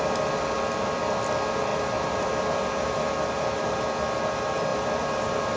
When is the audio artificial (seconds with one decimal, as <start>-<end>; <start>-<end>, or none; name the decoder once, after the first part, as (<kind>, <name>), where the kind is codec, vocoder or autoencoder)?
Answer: 1.7-4.0 (vocoder, BigVGAN v2); 4.7-5.6